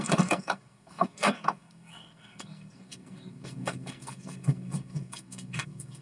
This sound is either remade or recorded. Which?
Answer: remade